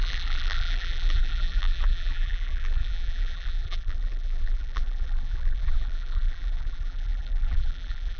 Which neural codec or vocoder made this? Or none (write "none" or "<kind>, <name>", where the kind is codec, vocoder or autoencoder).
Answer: vocoder, BigVGAN v2